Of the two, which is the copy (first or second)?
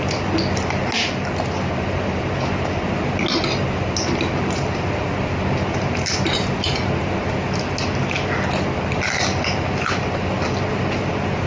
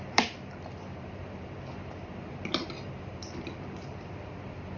second